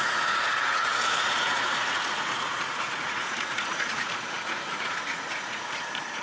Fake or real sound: fake